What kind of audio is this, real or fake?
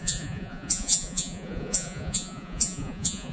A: fake